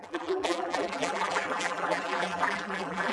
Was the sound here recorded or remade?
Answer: remade